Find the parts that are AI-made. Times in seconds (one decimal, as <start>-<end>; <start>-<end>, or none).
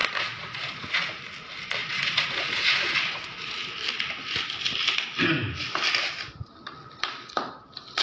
0.0-1.2; 1.8-3.4